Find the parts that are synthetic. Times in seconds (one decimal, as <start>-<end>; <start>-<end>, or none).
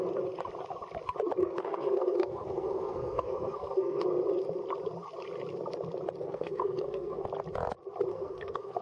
1.4-4.0; 6.2-7.2; 8.1-8.8